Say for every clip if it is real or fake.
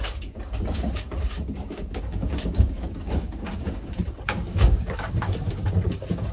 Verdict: fake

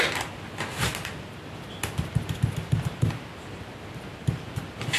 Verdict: real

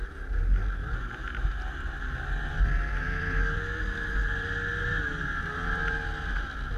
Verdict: real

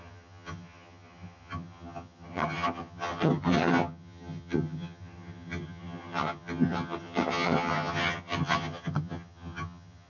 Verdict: fake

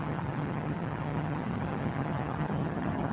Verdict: fake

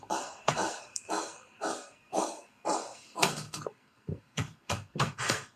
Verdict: fake